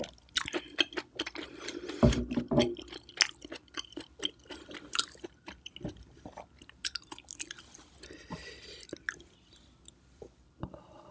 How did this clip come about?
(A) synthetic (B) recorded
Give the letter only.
B